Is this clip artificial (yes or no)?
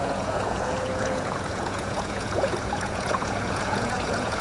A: yes